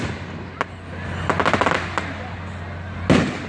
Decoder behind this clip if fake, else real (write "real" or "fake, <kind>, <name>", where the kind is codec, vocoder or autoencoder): real